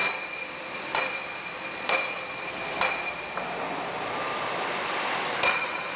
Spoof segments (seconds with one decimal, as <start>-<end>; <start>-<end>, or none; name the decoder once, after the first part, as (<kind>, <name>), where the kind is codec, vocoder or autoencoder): 0.0-6.0 (vocoder, BigVGAN v2)